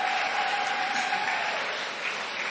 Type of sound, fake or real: real